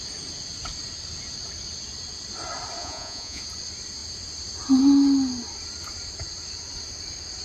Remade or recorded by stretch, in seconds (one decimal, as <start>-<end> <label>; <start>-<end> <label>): 0.0-2.8 recorded; 2.8-3.4 remade; 3.4-7.4 recorded

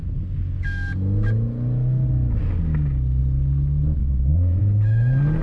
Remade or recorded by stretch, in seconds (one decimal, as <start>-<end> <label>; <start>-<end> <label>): 0.0-4.0 recorded; 4.0-4.6 remade; 4.6-5.4 recorded